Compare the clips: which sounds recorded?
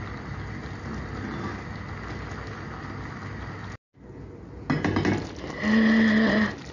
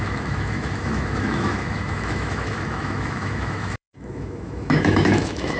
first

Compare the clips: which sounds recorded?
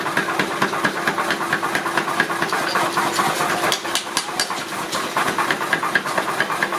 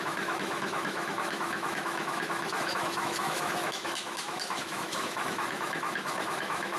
first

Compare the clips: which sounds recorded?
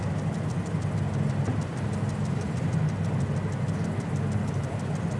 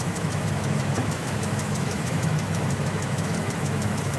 first